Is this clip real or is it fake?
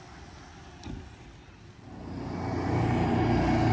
real